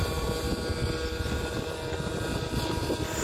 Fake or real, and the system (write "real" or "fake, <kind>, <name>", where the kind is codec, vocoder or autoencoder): real